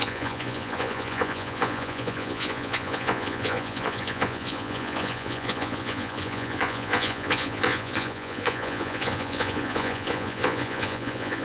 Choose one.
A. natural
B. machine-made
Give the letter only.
B